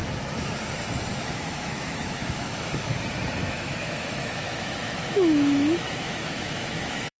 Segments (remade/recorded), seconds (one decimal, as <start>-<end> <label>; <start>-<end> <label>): 0.0-1.1 recorded; 1.1-2.9 remade; 2.9-3.4 recorded; 3.4-7.2 remade